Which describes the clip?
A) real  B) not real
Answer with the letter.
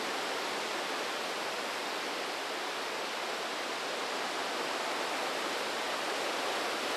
A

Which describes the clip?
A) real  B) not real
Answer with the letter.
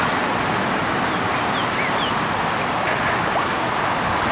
A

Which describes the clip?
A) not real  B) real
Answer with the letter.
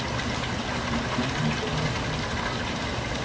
B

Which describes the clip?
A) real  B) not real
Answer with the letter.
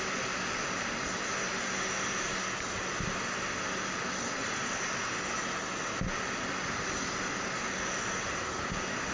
A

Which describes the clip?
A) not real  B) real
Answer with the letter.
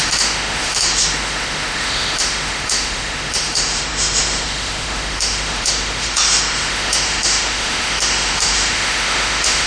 A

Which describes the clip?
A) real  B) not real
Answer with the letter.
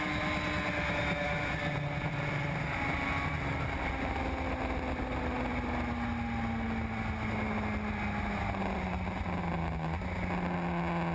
A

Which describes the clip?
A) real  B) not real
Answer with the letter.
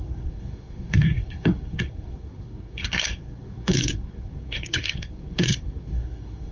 B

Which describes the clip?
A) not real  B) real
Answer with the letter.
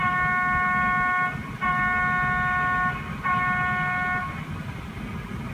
B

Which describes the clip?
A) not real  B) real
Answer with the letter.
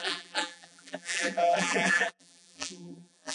A